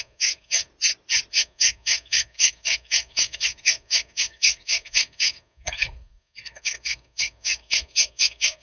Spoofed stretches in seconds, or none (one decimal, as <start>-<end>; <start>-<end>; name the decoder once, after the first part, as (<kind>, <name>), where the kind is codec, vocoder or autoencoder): 0.0-0.7 (codec, SNAC); 1.3-8.6